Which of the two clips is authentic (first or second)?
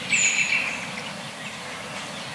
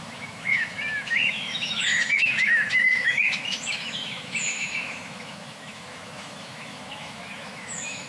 first